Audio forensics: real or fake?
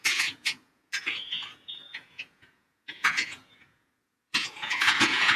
fake